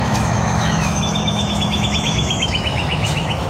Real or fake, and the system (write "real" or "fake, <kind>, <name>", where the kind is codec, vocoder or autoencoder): fake, autoencoder, DAC-VAE